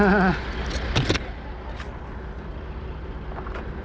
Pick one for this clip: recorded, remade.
recorded